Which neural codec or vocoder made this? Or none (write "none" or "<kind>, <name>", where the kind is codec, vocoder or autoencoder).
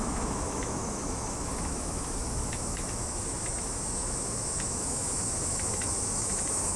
autoencoder, DAC-VAE